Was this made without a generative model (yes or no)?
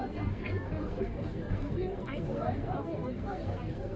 no